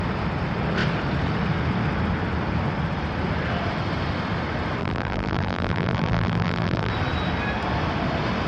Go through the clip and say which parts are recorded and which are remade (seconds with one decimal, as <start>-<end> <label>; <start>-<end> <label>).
0.0-4.8 recorded; 4.8-6.9 remade; 6.9-8.5 recorded